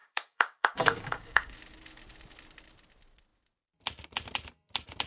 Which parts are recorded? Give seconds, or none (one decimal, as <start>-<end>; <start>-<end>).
1.6-5.1